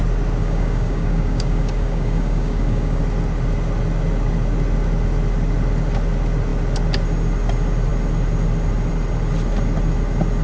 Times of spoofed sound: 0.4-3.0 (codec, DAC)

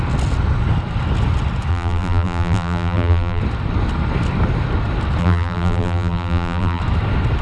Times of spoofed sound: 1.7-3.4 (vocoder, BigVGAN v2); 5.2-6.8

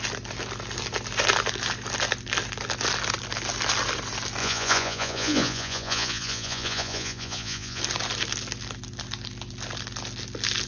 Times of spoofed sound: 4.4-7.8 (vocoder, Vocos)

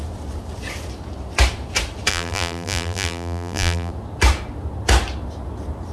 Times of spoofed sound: 2.1-3.9 (vocoder, BigVGAN v2)

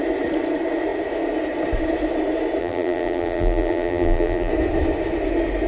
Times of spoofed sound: 2.6-4.5 (vocoder, BigVGAN v2)

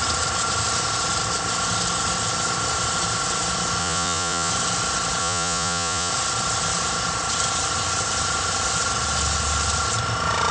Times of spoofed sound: 3.8-4.5 (vocoder, Vocos); 5.2-6.1

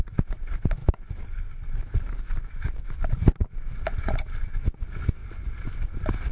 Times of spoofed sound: none

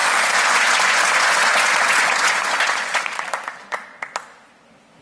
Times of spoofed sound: 0.0-3.0 (vocoder, Vocos)